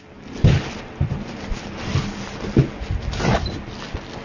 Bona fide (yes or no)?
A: yes